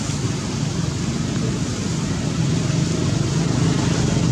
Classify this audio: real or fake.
real